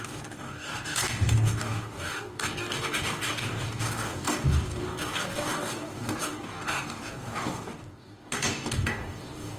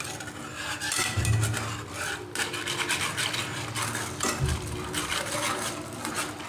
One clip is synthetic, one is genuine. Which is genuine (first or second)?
second